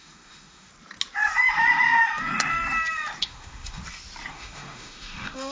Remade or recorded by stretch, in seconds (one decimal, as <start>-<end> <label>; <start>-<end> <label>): 0.0-0.7 remade; 0.7-3.2 recorded; 3.2-3.8 remade; 3.8-4.3 recorded; 4.3-5.5 remade